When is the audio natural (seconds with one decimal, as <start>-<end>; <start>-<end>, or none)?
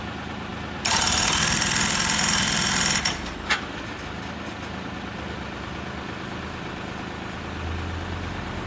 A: 0.0-8.7